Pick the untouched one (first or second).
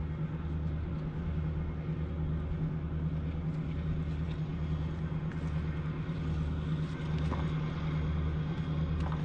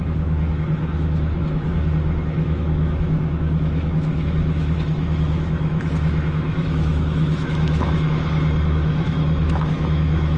first